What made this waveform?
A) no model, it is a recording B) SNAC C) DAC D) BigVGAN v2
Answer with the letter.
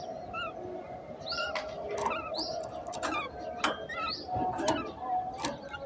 A